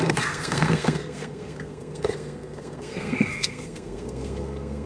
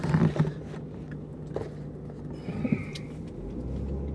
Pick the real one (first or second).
second